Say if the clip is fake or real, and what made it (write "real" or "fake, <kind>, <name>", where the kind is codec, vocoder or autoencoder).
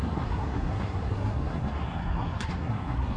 fake, codec, SNAC